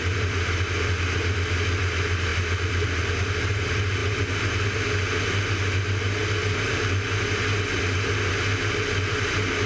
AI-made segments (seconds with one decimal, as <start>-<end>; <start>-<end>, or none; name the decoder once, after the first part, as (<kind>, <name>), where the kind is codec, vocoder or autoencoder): none